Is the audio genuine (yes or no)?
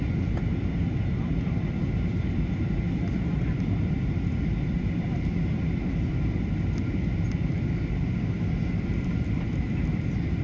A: yes